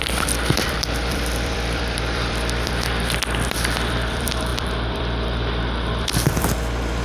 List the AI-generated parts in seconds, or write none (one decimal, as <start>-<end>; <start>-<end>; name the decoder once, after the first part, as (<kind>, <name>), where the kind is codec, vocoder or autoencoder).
0.0-7.0 (vocoder, BigVGAN v2)